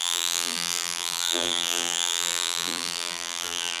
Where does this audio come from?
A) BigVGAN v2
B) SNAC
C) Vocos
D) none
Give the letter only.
A